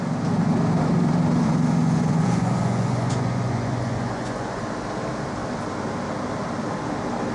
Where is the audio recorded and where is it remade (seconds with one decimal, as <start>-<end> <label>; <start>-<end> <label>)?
0.0-1.8 recorded; 1.8-4.6 remade; 4.6-7.3 recorded